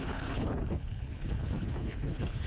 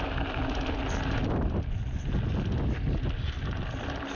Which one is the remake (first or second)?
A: first